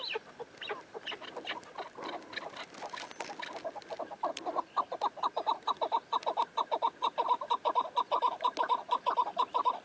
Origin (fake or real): real